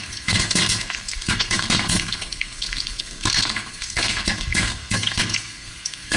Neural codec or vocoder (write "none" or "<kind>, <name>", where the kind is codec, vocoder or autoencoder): codec, SNAC